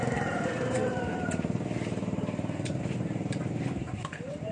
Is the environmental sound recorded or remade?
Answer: remade